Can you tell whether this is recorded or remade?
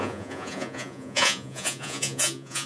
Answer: remade